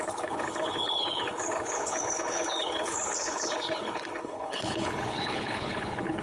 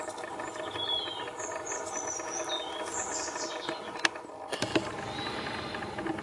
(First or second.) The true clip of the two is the second